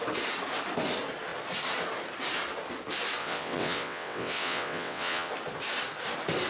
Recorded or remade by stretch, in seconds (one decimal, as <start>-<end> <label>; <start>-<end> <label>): 0.0-3.2 recorded; 3.2-5.3 remade; 5.3-6.5 recorded

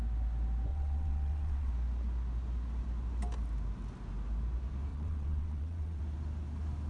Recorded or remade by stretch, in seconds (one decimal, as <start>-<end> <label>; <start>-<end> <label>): 0.0-0.7 recorded; 0.7-1.7 remade; 1.7-4.9 recorded; 4.9-6.0 remade; 6.0-6.9 recorded

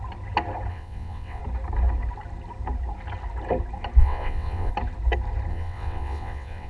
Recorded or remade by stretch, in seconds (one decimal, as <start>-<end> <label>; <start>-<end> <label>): 0.0-0.7 recorded; 0.7-1.4 remade; 1.4-4.0 recorded; 4.0-4.7 remade; 4.7-5.5 recorded; 5.5-6.7 remade

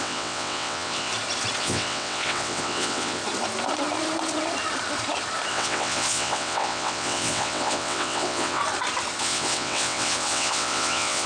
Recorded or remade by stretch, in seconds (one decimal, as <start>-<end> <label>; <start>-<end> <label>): 0.0-1.1 remade; 1.1-1.6 recorded; 1.6-3.2 remade; 3.2-5.5 recorded; 5.5-8.6 remade; 8.6-9.2 recorded; 9.2-11.3 remade

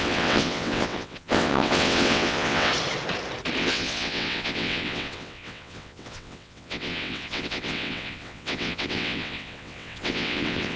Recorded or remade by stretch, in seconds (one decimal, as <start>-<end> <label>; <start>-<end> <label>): 0.0-2.7 remade; 2.7-3.6 recorded; 3.6-10.8 remade

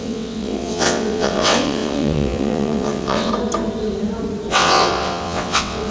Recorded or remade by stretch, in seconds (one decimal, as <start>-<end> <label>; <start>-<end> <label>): 0.0-3.3 remade; 3.3-4.5 recorded; 4.5-5.9 remade